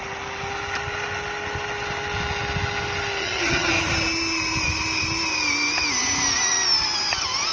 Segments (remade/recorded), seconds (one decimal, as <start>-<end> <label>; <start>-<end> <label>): 0.0-3.2 recorded; 3.2-3.7 remade; 3.7-7.5 recorded